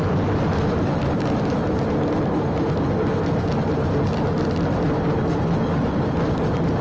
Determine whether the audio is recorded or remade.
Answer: recorded